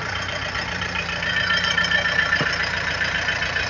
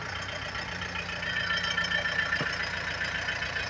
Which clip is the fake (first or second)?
first